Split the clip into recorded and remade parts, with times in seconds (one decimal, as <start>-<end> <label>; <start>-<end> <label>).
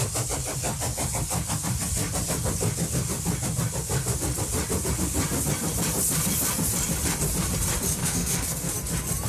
0.0-8.0 recorded; 8.0-8.7 remade; 8.7-9.3 recorded